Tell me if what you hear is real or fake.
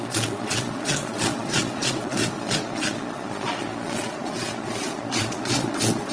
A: fake